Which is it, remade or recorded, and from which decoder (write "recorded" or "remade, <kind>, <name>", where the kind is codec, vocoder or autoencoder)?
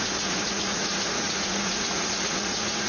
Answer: remade, vocoder, Vocos